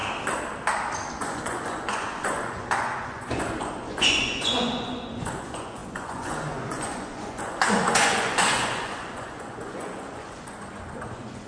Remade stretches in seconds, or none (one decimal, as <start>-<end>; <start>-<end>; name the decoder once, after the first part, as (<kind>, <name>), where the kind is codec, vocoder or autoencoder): 1.1-11.5 (vocoder, Vocos)